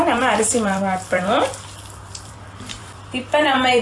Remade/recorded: remade